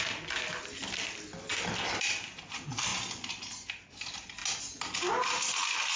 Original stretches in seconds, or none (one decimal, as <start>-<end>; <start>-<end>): 1.5-2.0; 2.9-3.9; 4.4-5.1

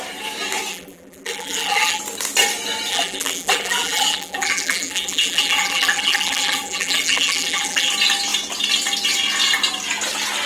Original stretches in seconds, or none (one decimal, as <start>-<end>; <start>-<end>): 0.0-0.7; 2.0-2.9; 7.9-10.5

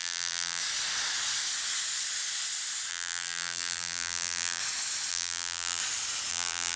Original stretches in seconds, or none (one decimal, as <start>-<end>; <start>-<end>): 0.6-2.9; 4.6-5.1; 5.8-6.3